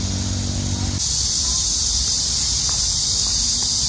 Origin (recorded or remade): recorded